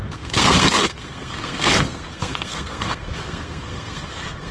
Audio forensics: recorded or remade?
remade